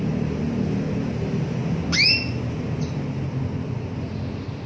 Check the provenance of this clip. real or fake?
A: real